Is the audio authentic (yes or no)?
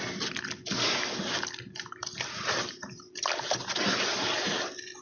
yes